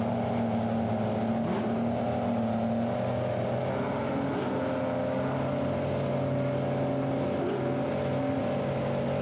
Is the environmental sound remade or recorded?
recorded